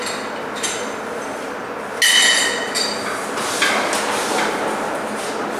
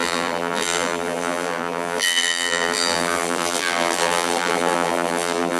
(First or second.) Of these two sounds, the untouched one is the first